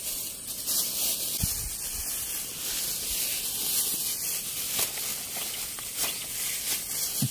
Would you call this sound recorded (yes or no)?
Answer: yes